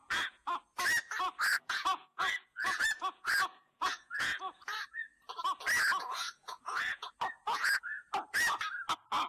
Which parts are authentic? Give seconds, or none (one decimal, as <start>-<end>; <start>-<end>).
0.6-1.5; 4.8-5.9; 8.1-9.3